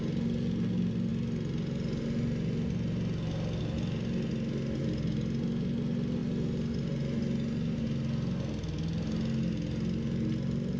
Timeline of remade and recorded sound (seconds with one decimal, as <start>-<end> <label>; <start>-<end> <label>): 0.0-10.8 recorded